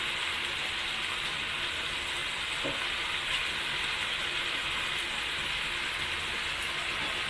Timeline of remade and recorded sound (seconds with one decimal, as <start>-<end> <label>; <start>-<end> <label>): 0.0-7.3 recorded